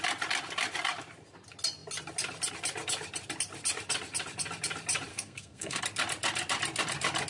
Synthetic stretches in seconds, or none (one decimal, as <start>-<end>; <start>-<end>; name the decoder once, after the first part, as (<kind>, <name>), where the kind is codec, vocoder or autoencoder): 5.1-5.8 (codec, SNAC)